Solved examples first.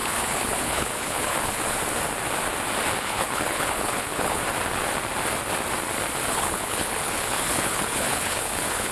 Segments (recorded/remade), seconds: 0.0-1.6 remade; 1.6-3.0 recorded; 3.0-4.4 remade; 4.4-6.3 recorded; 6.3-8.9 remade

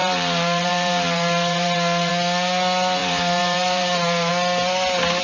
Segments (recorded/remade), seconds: 0.0-2.1 remade; 2.1-3.0 recorded; 3.0-4.3 remade; 4.3-5.2 recorded